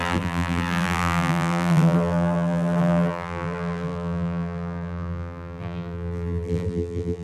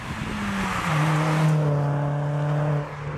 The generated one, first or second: first